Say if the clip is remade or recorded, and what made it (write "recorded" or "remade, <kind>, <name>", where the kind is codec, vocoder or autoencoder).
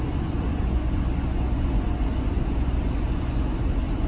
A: remade, vocoder, Vocos